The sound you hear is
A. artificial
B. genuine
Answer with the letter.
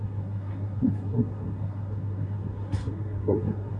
A